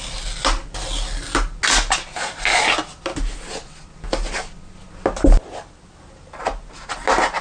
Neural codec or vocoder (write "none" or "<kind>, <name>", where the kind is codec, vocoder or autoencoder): none